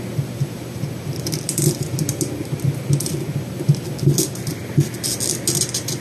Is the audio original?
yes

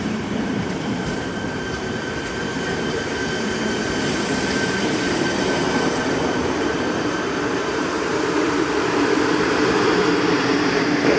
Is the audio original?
no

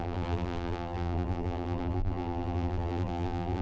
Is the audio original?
no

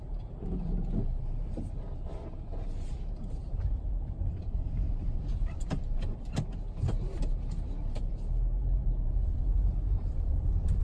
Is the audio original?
no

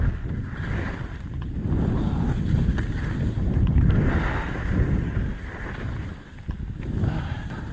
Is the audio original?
yes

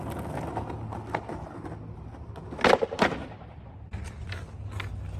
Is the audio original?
yes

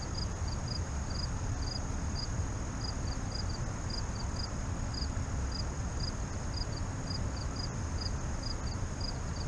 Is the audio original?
yes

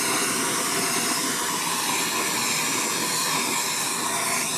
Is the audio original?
yes